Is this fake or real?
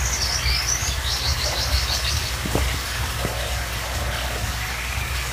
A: fake